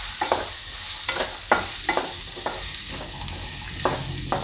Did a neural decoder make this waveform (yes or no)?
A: no